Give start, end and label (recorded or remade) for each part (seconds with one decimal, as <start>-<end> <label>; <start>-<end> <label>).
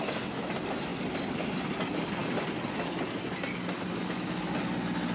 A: 0.0-5.1 recorded